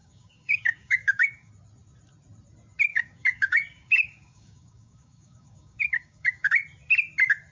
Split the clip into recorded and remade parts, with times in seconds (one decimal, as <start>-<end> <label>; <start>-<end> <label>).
0.0-1.5 remade; 1.5-2.9 recorded; 2.9-6.5 remade; 6.5-7.5 recorded